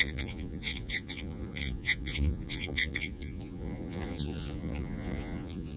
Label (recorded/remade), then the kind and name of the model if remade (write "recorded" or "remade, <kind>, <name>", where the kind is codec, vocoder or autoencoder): remade, vocoder, Vocos